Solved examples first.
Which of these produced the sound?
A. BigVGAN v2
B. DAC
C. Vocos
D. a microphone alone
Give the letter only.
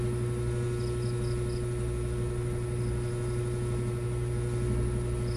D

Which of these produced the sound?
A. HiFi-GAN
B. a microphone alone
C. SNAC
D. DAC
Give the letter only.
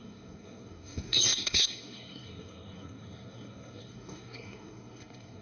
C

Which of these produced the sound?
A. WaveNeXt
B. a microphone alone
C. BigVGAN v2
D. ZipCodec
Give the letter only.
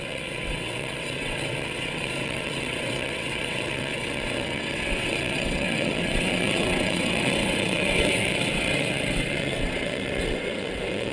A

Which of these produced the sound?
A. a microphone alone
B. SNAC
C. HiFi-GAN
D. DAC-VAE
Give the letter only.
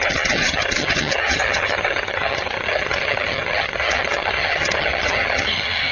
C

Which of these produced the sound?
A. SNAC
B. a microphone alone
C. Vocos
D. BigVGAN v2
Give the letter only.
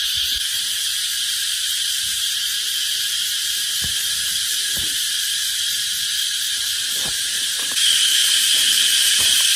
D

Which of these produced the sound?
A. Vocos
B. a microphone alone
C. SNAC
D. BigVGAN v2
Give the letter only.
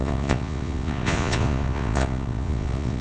A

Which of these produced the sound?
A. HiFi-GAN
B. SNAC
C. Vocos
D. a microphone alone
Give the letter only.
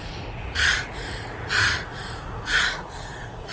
C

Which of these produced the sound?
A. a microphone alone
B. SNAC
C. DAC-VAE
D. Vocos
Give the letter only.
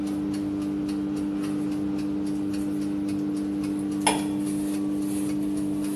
A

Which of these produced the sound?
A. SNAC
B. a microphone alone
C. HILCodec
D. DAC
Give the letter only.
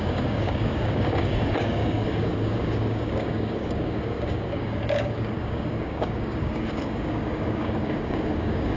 D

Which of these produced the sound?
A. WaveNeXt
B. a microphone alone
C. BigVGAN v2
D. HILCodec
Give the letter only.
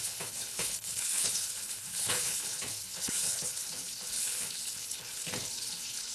D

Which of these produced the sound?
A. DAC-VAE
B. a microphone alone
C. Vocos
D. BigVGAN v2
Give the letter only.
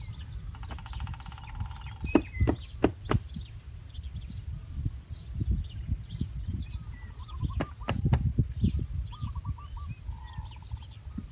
B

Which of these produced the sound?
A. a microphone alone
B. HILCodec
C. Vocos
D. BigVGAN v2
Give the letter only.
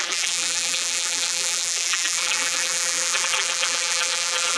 D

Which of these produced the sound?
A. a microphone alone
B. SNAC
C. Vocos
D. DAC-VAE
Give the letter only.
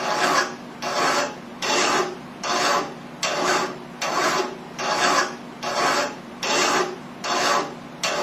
A